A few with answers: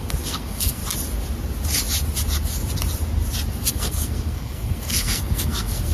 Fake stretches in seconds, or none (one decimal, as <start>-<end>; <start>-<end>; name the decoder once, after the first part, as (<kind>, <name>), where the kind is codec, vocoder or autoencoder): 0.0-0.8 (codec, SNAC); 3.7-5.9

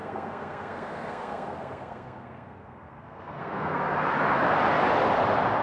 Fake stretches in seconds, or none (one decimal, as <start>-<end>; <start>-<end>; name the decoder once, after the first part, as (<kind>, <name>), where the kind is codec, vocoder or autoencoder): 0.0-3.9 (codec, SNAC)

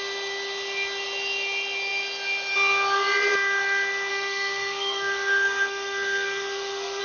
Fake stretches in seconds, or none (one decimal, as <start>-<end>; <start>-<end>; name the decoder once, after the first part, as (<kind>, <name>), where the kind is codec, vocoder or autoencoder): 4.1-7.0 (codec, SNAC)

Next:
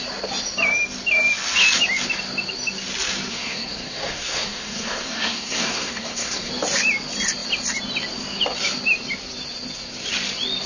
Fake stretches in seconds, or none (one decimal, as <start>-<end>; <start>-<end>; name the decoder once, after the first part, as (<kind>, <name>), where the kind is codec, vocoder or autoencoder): 3.3-6.5 (codec, SNAC)

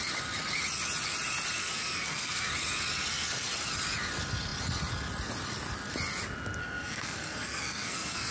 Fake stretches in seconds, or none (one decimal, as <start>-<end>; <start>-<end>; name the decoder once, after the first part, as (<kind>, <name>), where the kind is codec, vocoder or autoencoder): 1.6-2.5 (codec, SNAC); 6.6-8.3

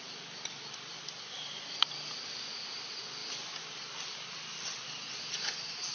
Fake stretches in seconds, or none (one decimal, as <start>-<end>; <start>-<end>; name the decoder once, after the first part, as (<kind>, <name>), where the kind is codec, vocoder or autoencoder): none